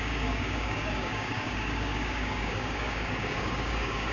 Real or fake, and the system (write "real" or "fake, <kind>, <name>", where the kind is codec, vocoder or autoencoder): fake, codec, DAC